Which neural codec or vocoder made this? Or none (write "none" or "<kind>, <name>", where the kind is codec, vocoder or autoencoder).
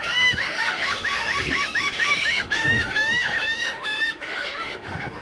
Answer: autoencoder, DAC-VAE